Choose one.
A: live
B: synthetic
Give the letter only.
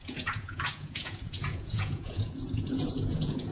B